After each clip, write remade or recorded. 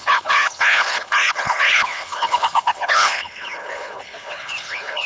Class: remade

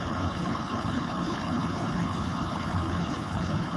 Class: remade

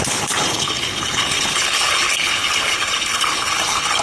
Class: remade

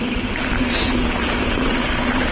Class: recorded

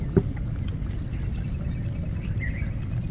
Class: recorded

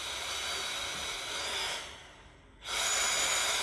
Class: recorded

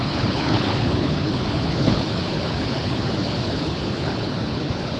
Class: remade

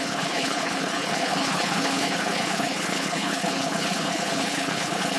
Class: remade